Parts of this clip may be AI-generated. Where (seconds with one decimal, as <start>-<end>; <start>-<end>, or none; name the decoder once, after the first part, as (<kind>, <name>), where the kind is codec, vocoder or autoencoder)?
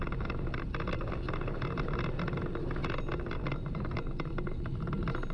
none